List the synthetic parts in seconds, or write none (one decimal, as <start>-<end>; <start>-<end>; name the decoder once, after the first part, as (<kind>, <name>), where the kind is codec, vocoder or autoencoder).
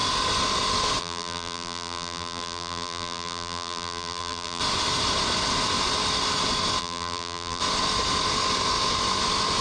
1.0-4.6 (vocoder, BigVGAN v2); 6.8-7.6